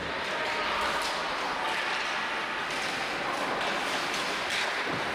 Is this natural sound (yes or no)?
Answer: yes